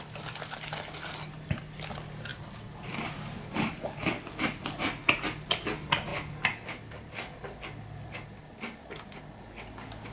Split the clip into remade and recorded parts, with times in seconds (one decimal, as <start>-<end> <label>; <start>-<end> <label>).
0.0-10.1 recorded